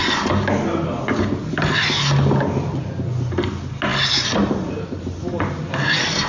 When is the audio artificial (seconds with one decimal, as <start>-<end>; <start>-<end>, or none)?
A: none